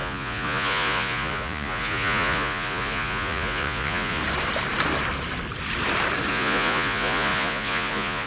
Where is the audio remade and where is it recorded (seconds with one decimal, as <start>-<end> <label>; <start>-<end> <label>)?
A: 0.0-4.2 remade; 4.2-6.3 recorded; 6.3-8.3 remade